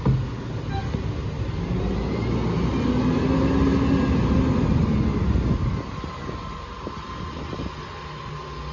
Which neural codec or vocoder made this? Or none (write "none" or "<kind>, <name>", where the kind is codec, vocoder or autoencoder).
none